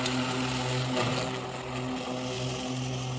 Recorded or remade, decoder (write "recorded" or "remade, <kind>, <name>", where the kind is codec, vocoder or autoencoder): recorded